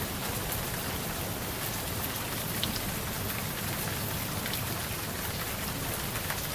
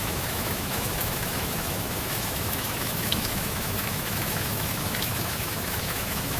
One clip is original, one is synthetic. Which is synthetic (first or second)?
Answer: second